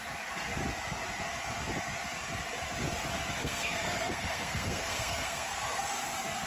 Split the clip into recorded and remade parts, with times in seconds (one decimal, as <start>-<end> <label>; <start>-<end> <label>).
0.0-3.4 recorded; 3.4-5.8 remade; 5.8-6.5 recorded